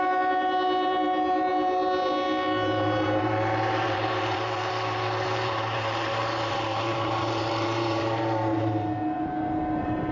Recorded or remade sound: remade